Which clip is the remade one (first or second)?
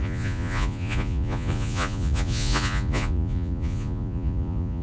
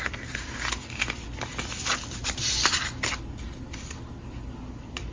first